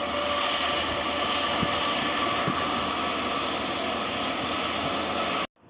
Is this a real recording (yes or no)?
yes